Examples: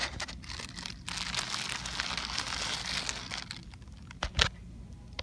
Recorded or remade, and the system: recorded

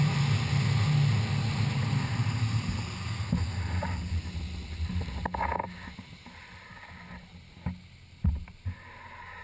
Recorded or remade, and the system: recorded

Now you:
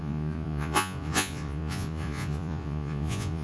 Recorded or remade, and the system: remade, vocoder, Vocos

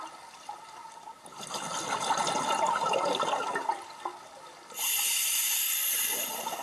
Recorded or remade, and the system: recorded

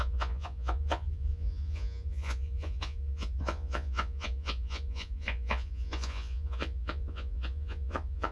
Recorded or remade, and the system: remade, vocoder, Vocos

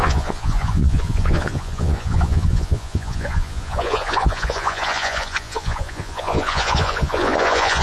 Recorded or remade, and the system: remade, vocoder, Vocos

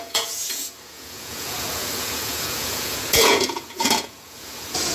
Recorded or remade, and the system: remade, vocoder, Vocos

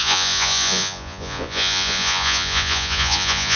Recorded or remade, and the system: remade, vocoder, Vocos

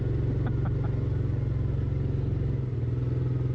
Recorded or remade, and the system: recorded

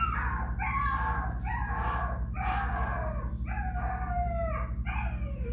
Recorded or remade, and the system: recorded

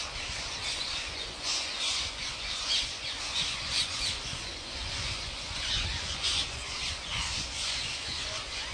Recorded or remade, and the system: remade, vocoder, Vocos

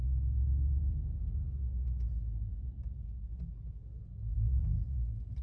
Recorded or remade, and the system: recorded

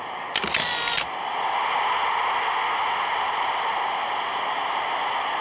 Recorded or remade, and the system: recorded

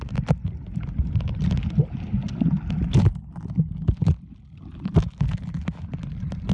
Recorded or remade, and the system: recorded